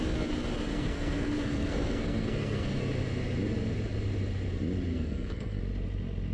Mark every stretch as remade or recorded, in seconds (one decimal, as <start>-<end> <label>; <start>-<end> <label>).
0.0-0.7 recorded; 0.7-2.8 remade; 2.8-4.9 recorded; 4.9-5.6 remade; 5.6-6.3 recorded